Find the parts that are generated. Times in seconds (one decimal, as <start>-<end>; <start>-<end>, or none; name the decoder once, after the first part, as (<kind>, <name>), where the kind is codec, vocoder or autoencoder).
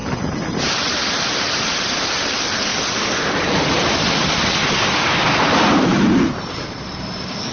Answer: 0.0-2.7 (vocoder, BigVGAN v2); 5.8-7.5